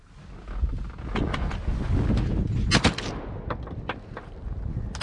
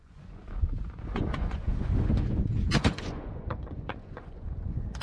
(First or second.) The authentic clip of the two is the first